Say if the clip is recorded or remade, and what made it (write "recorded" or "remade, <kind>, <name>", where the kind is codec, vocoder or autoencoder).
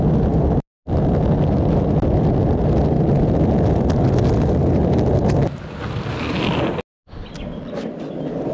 recorded